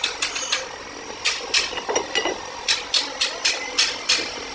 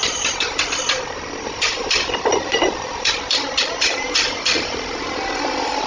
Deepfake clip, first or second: second